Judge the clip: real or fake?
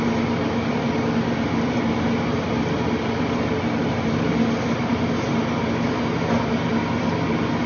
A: real